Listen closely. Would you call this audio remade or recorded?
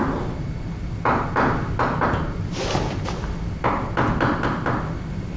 recorded